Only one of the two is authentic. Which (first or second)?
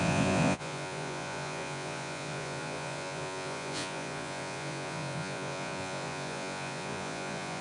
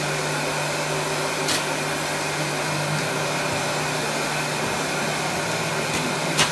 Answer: second